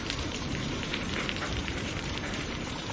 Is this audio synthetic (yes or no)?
yes